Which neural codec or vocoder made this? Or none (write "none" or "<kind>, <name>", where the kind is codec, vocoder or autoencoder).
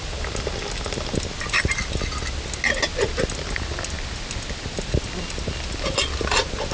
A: none